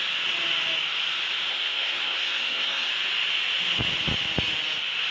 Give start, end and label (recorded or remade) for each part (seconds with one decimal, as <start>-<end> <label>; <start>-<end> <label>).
0.0-1.5 recorded; 1.5-2.9 remade; 2.9-5.1 recorded